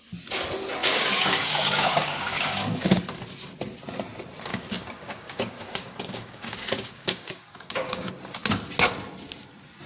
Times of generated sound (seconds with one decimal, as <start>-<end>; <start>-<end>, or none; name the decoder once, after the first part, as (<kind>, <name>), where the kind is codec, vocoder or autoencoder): 0.8-3.0 (codec, DAC); 4.5-8.1